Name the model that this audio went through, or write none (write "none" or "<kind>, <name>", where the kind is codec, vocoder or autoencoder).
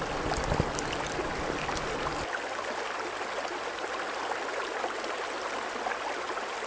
none